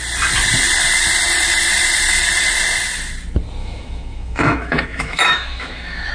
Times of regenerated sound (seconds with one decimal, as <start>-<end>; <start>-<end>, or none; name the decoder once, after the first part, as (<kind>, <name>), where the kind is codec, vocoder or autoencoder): 3.6-6.1 (autoencoder, DAC-VAE)